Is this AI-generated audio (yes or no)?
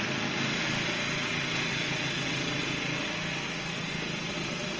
no